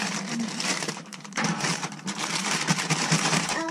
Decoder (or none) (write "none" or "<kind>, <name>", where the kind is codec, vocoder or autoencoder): vocoder, BigVGAN v2